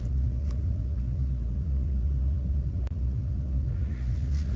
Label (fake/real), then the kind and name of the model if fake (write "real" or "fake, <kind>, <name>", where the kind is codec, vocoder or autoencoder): fake, vocoder, Vocos